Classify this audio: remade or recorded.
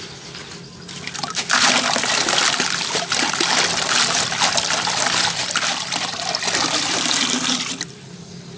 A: recorded